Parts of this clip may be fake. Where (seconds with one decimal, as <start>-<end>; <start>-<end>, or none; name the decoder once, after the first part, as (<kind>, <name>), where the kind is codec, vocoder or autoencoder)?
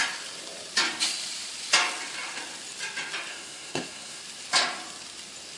3.3-4.2 (codec, SNAC)